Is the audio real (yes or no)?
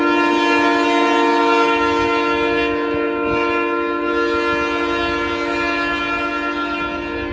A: yes